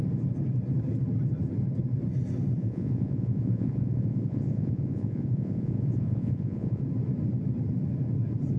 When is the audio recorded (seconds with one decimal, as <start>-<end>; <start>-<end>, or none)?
0.0-2.6; 6.8-8.6